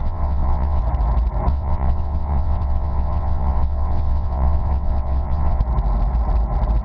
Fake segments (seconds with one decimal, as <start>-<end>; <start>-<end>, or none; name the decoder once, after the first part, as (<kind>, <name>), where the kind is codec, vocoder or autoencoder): 0.0-0.8 (vocoder, WaveNeXt); 1.5-5.6